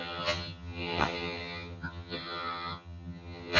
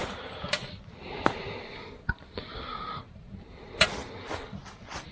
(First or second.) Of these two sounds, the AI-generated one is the first